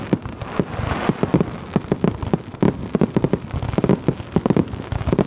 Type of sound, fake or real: real